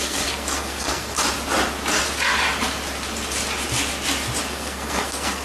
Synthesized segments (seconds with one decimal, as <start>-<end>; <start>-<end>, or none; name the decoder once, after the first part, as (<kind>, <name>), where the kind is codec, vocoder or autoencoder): 0.0-1.2 (codec, SNAC); 4.4-5.4